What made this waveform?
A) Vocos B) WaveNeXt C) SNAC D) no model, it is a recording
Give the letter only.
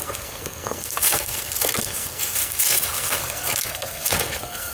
C